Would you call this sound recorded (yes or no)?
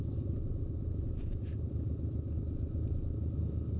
yes